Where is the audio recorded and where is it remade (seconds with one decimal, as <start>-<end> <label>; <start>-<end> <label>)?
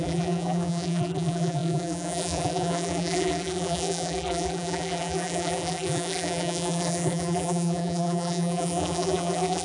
0.0-9.6 remade